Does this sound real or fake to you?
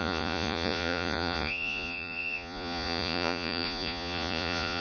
fake